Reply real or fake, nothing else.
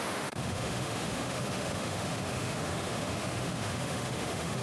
fake